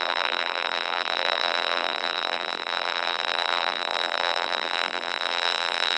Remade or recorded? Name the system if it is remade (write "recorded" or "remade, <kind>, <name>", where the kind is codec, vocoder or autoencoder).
remade, vocoder, BigVGAN v2